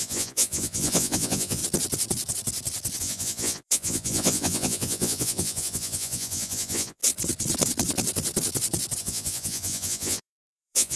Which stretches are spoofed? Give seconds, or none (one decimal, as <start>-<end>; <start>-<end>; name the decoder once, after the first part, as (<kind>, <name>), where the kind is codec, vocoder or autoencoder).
0.0-1.6 (vocoder, Vocos); 3.0-7.0; 9.0-11.0